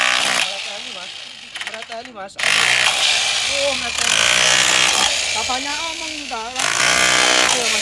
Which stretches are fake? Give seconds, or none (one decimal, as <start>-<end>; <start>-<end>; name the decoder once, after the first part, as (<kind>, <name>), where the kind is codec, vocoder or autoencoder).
5.7-6.8 (autoencoder, DAC-VAE)